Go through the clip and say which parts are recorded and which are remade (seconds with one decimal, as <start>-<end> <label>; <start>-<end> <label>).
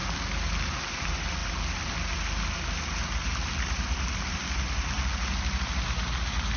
0.0-6.6 recorded